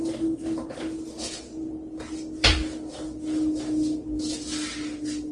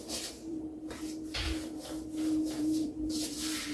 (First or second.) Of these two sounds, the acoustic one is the first